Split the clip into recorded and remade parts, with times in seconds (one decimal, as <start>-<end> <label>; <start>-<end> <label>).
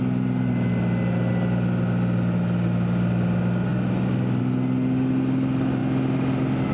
0.0-6.7 recorded